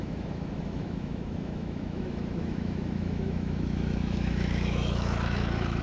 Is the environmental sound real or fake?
fake